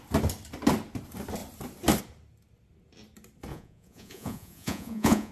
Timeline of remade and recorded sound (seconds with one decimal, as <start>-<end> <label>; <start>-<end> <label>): 0.0-3.5 recorded; 3.5-5.3 remade